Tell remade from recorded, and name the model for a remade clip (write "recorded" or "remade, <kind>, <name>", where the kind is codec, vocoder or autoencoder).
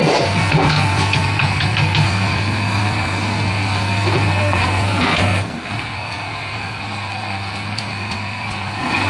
remade, codec, SNAC